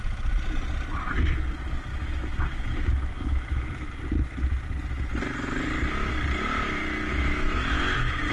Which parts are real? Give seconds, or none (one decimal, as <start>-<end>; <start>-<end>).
0.0-1.9; 3.9-7.1